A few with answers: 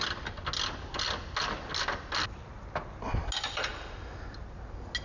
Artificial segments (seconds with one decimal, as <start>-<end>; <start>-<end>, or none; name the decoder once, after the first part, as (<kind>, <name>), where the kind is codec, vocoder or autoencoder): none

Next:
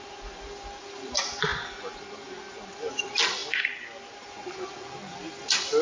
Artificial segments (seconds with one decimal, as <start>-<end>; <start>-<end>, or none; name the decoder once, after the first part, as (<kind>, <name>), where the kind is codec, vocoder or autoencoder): 0.0-1.5 (vocoder, BigVGAN v2); 2.5-3.4; 4.0-5.8

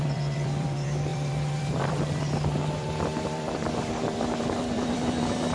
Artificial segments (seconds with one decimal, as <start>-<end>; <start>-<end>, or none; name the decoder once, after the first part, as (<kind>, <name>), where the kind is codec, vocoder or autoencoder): 0.0-5.5 (vocoder, BigVGAN v2)

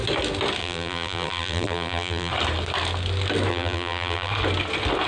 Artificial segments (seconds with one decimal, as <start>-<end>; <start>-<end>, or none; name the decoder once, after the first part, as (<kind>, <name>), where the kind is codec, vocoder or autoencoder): 0.6-2.3 (vocoder, BigVGAN v2); 3.5-4.3

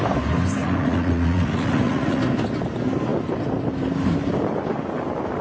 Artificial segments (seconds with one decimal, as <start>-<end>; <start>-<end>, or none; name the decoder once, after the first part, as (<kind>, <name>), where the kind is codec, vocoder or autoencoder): 0.6-2.2 (vocoder, Vocos)

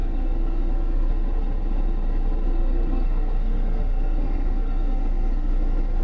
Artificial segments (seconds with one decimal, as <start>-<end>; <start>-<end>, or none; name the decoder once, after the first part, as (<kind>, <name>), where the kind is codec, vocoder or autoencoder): 0.0-1.1 (codec, SNAC); 2.6-5.5

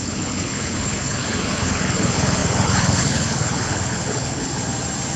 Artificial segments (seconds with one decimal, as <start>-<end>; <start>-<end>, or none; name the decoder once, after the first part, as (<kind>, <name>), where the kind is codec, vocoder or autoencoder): 0.0-4.5 (codec, HILCodec)